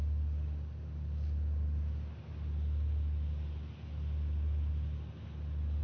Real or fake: real